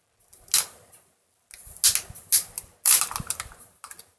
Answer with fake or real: real